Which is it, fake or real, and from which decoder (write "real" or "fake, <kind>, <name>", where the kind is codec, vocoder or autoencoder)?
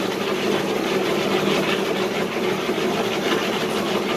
real